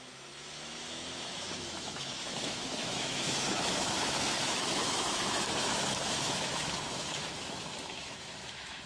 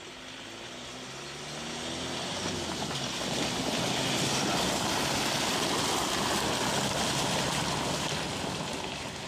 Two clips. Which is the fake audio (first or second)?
first